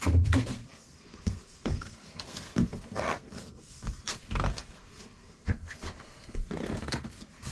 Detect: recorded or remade remade